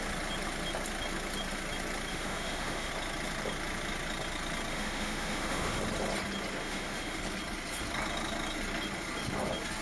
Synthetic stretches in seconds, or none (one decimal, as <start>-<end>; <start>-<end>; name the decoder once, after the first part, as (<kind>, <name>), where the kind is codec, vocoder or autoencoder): 2.1-2.9 (autoencoder, DAC-VAE); 4.7-5.8; 6.6-7.2